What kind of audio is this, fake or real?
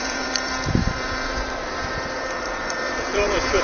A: fake